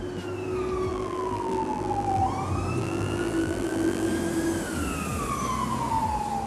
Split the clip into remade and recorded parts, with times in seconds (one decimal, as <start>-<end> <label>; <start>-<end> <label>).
0.0-0.9 recorded; 0.9-2.2 remade; 2.2-2.8 recorded; 2.8-4.1 remade; 4.1-6.5 recorded

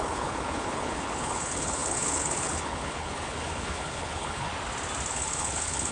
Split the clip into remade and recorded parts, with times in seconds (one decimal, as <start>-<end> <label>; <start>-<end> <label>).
0.0-4.5 remade; 4.5-5.1 recorded; 5.1-5.9 remade

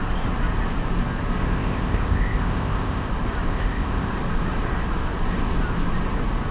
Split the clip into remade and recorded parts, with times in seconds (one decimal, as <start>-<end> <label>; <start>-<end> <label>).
0.0-1.4 recorded; 1.4-3.1 remade; 3.1-3.5 recorded; 3.5-4.1 remade; 4.1-6.5 recorded

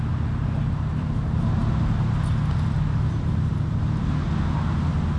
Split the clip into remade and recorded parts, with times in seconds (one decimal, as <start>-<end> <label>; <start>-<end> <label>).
0.0-5.2 recorded